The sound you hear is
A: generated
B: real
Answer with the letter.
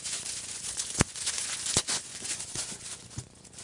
A